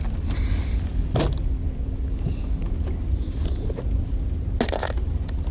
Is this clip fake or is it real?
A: real